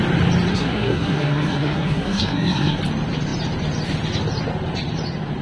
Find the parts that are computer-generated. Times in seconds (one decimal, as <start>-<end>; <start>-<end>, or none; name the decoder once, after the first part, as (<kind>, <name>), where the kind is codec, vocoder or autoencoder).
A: 0.5-2.8 (codec, SNAC)